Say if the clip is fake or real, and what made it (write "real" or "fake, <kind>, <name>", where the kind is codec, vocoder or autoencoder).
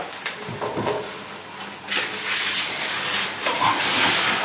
real